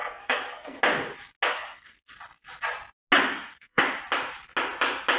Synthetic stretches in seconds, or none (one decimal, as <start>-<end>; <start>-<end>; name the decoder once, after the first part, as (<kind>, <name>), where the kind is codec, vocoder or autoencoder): 0.0-0.8 (codec, SNAC); 1.5-2.1; 3.3-3.8